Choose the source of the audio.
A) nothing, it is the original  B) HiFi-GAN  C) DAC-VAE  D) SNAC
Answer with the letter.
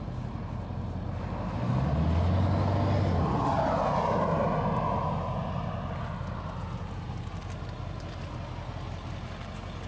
A